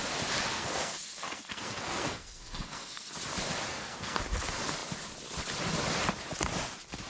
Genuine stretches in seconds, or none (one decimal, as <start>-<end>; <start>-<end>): 0.0-0.5; 3.1-3.7; 4.2-7.1

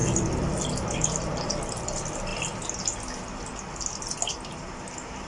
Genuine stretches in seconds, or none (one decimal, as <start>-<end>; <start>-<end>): 0.0-5.3